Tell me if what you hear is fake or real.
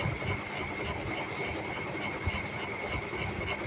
real